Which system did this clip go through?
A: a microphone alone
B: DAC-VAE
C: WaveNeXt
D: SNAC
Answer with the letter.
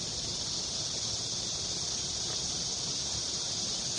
A